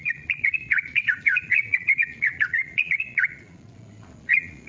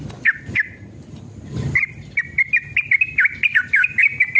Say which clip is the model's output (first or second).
first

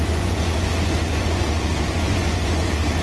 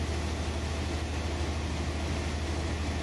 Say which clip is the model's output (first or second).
first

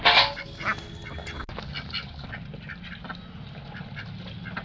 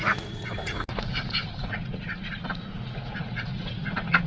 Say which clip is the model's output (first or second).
second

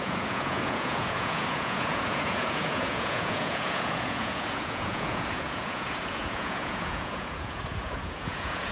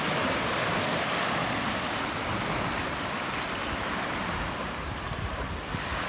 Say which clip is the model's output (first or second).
first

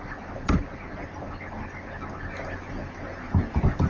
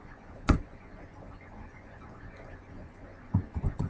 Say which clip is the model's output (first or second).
second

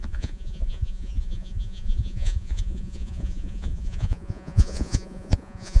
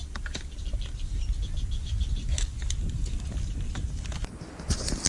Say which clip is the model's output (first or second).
first